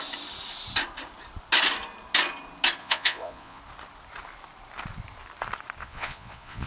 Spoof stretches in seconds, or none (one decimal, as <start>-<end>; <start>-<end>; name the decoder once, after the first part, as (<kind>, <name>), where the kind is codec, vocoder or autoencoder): 2.8-3.6 (vocoder, Vocos); 5.8-6.7